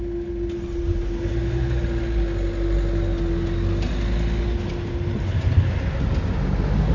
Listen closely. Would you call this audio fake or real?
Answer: real